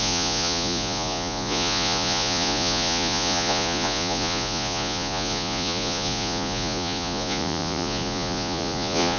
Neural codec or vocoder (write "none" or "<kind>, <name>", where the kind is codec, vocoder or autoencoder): vocoder, Vocos